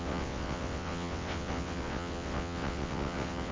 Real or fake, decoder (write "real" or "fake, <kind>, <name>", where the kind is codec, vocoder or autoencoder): fake, vocoder, WaveNeXt